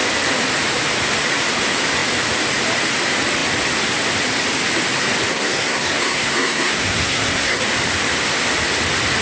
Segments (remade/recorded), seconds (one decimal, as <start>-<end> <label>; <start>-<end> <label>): 0.0-5.3 recorded; 5.3-7.6 remade; 7.6-9.2 recorded